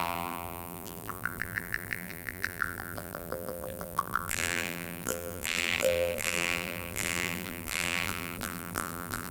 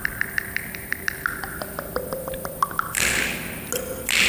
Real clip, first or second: second